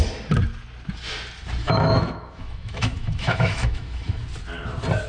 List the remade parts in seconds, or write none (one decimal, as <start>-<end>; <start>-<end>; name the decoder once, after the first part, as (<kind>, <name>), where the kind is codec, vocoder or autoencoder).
1.6-4.2 (autoencoder, DAC-VAE)